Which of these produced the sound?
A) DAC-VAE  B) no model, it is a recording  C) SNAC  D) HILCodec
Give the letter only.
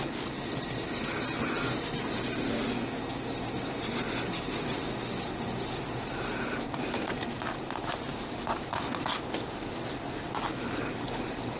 B